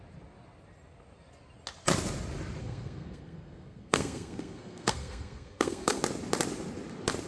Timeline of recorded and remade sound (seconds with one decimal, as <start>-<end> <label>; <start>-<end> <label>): 0.0-2.6 recorded; 2.6-6.0 remade; 6.0-7.3 recorded